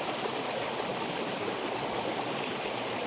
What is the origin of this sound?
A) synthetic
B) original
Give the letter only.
B